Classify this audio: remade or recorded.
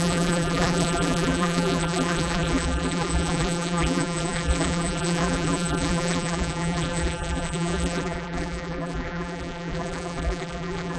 remade